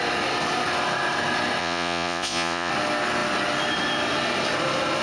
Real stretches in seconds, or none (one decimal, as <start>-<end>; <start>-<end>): 0.0-1.6; 2.7-5.0